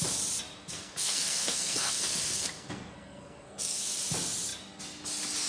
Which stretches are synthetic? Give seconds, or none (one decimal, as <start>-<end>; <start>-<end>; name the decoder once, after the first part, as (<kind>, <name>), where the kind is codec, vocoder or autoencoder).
0.6-3.9 (codec, SNAC)